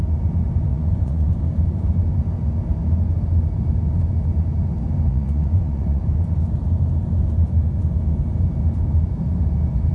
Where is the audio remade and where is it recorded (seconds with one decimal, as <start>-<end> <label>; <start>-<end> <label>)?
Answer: 0.0-0.7 recorded; 0.7-1.3 remade; 1.3-5.1 recorded; 5.1-6.0 remade; 6.0-9.9 recorded